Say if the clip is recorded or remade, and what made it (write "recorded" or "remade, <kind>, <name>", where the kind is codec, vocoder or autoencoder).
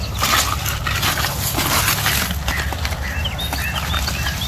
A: recorded